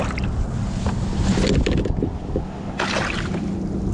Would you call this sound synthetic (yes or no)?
no